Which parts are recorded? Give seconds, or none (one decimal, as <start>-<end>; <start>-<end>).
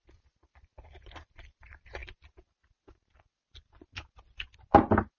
2.0-5.2